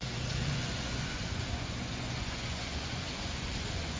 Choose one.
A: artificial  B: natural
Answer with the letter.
A